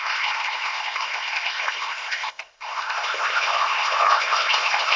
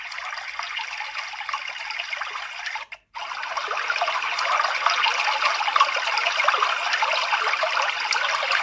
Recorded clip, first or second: second